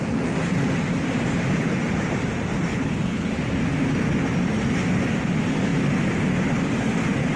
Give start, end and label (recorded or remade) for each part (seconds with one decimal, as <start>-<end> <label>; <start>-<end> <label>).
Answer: 0.0-2.7 recorded; 2.7-3.3 remade; 3.3-7.4 recorded